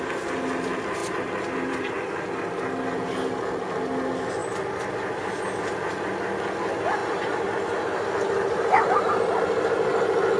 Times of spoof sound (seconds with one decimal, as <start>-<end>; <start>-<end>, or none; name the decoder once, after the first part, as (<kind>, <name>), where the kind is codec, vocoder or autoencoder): 7.0-9.0 (vocoder, BigVGAN v2)